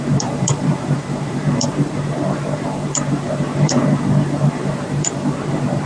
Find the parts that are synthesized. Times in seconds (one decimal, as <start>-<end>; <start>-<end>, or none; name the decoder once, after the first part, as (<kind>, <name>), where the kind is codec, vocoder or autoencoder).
0.0-5.9 (vocoder, BigVGAN v2)